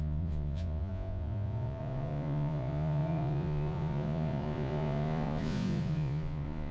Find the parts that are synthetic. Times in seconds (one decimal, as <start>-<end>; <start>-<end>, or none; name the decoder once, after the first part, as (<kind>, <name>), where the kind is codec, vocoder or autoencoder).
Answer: 0.0-6.7 (vocoder, Vocos)